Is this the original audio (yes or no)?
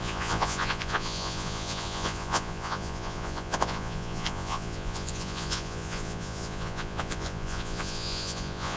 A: no